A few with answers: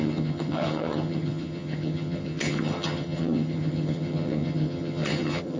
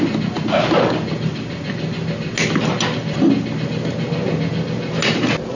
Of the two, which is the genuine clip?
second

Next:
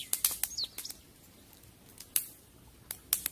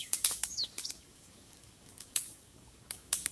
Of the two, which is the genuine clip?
first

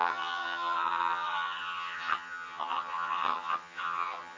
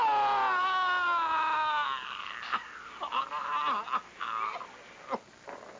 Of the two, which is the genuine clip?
second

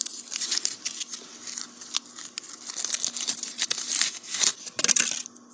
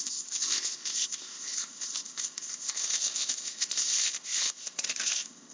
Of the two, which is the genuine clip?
first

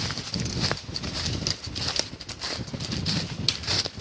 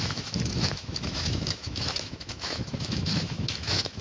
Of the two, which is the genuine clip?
first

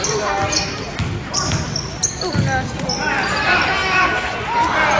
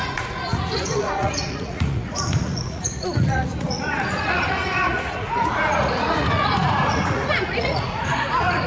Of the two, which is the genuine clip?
first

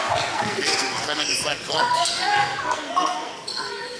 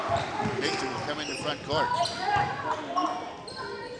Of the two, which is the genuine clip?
second